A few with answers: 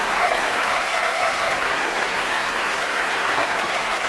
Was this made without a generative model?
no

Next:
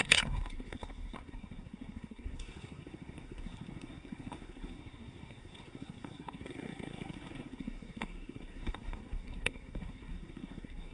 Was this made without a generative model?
no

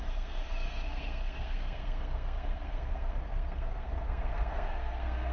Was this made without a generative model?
no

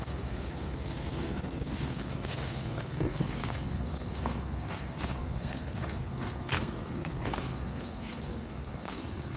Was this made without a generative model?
no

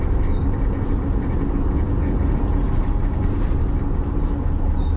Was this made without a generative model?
yes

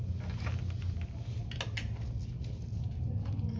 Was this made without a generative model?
yes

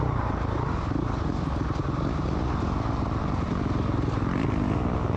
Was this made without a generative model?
yes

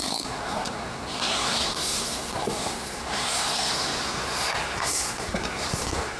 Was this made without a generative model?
no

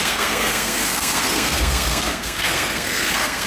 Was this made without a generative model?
no